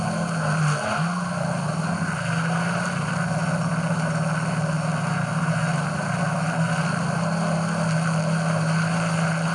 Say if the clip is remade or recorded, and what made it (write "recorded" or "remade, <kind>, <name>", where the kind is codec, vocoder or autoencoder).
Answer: recorded